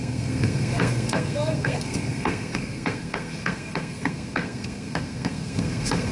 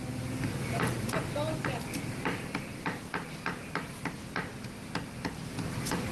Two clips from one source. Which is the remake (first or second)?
first